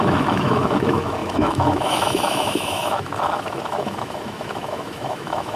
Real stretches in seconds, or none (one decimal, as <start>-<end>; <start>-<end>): none